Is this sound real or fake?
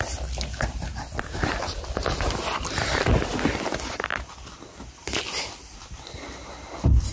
real